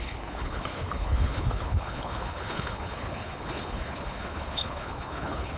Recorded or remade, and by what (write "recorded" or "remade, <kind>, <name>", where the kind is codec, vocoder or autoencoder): remade, codec, HILCodec